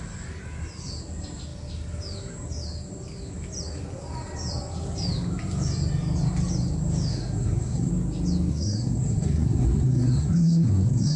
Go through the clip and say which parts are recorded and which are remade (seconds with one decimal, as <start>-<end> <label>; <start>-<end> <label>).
0.0-7.1 recorded; 7.1-7.9 remade; 7.9-8.5 recorded; 8.5-11.2 remade